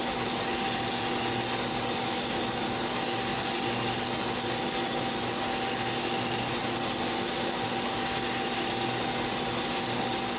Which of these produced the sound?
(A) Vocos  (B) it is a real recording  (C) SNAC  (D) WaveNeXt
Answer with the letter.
B